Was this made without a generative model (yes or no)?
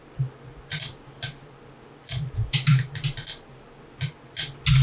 yes